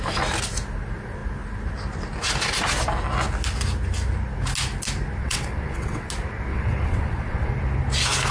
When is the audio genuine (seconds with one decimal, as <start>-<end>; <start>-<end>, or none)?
0.0-5.2; 6.1-6.5; 7.5-8.3